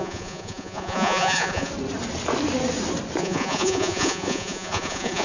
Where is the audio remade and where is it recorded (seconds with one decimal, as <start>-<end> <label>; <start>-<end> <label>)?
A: 0.0-1.7 remade; 1.7-3.2 recorded; 3.2-5.2 remade